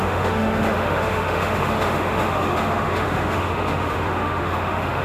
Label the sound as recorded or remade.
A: remade